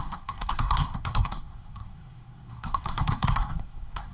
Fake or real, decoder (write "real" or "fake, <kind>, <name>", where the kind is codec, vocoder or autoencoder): fake, codec, SNAC